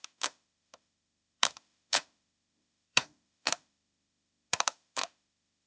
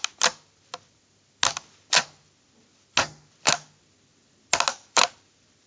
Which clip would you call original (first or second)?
second